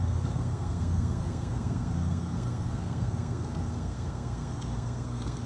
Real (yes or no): no